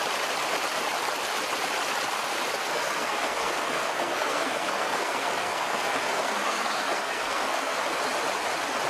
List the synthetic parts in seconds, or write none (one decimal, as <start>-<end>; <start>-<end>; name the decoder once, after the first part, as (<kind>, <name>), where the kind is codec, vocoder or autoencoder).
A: 2.6-7.8 (codec, SNAC)

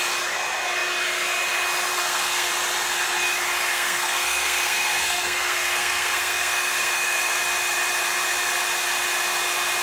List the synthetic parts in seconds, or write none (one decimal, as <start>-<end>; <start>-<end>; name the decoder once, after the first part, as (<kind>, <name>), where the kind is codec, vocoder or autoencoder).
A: 1.9-2.5 (codec, SNAC); 3.7-7.4

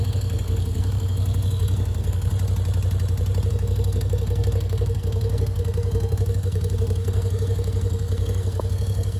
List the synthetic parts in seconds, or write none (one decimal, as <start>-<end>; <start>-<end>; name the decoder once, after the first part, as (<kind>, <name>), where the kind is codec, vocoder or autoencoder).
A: 0.0-2.3 (codec, SNAC); 3.5-9.2

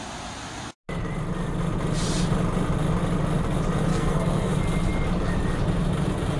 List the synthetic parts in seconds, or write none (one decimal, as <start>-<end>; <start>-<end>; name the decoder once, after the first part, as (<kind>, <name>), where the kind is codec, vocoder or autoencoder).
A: 3.9-4.5 (codec, SNAC)

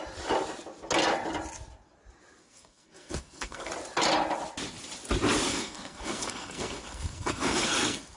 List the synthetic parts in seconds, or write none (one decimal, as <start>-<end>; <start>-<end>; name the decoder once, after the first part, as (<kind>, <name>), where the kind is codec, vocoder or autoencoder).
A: 2.4-3.7 (codec, SNAC); 5.5-8.2

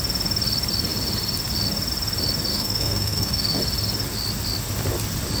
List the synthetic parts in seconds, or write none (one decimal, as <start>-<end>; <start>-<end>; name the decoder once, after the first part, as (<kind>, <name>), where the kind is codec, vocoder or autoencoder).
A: 2.5-3.6 (codec, SNAC)

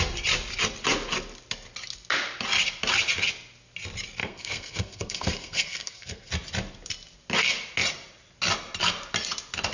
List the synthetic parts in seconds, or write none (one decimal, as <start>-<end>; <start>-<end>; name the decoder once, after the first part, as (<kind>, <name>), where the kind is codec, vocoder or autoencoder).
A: 4.2-6.3 (codec, SNAC)